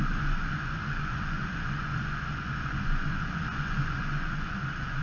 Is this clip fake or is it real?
fake